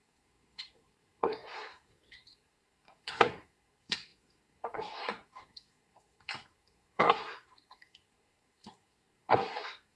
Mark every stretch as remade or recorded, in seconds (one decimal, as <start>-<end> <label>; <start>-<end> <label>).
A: 0.0-10.0 remade